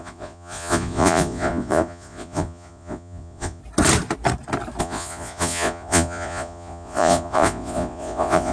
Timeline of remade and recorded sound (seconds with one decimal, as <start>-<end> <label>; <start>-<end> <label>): 0.0-3.6 remade; 3.6-4.8 recorded; 4.8-8.5 remade